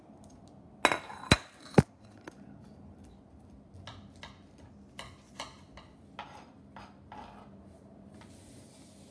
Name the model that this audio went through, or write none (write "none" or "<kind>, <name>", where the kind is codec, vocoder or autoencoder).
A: none